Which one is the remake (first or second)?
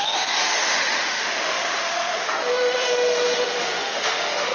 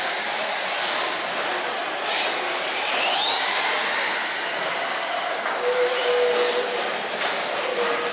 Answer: first